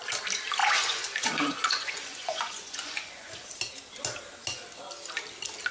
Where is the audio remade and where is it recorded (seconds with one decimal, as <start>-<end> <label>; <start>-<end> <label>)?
0.0-0.6 recorded; 0.6-3.5 remade; 3.5-5.7 recorded